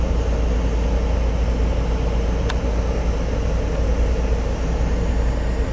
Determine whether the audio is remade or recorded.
recorded